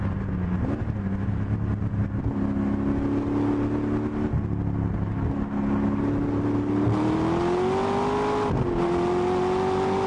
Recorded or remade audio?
recorded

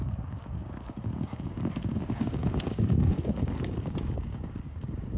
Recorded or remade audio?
remade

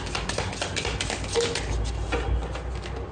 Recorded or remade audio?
recorded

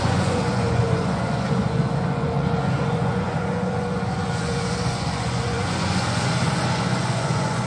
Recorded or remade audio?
remade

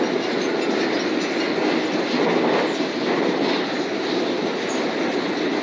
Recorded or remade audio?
recorded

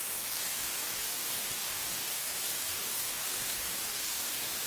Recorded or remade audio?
remade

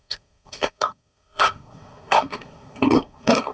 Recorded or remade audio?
remade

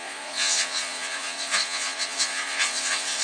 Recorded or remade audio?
remade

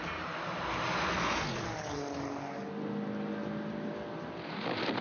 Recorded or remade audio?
recorded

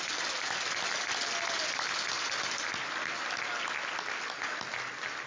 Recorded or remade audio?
recorded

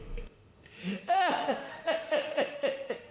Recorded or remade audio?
remade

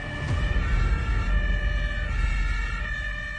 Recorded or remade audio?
recorded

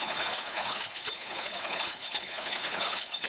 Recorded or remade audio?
remade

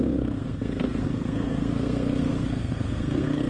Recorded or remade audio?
remade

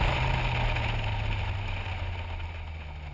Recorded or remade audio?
recorded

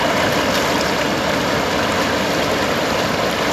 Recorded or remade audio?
recorded